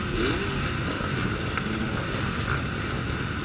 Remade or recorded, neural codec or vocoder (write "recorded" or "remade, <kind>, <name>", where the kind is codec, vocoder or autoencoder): recorded